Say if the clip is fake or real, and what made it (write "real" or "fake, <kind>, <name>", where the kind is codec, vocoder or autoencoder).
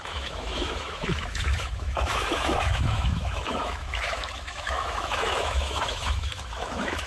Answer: fake, autoencoder, DAC-VAE